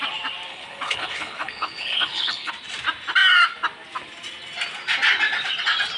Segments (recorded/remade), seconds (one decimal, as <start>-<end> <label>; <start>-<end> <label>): 0.0-0.5 recorded; 0.5-2.5 remade; 2.5-6.0 recorded